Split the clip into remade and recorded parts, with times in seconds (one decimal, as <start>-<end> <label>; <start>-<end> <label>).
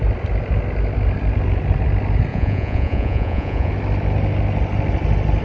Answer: 0.0-2.3 recorded; 2.3-3.7 remade; 3.7-5.4 recorded